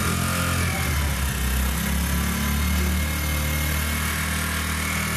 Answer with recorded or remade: recorded